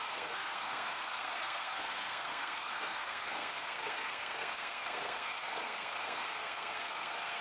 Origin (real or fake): fake